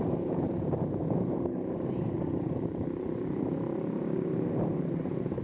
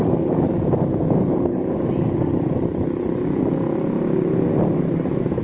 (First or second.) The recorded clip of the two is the second